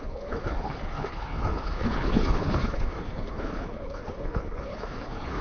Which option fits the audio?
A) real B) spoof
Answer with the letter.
B